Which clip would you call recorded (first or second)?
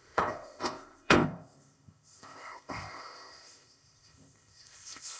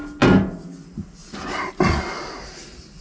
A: second